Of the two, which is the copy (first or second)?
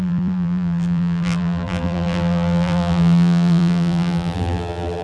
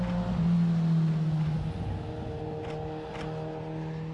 first